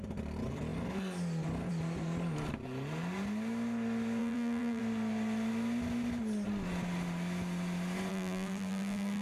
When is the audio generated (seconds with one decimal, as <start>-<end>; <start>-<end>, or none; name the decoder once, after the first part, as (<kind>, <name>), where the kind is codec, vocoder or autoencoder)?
4.2-4.8 (vocoder, BigVGAN v2); 8.1-9.2